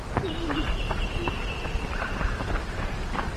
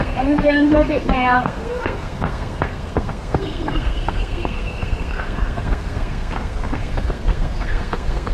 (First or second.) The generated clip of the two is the second